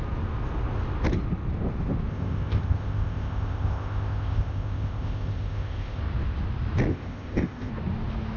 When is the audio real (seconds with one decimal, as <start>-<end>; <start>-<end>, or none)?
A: 0.0-2.1; 6.0-6.9; 7.7-8.4